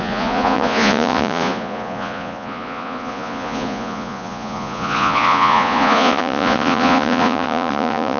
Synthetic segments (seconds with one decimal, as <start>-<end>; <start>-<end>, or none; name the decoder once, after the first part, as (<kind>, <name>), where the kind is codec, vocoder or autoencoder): 0.0-8.2 (vocoder, Vocos)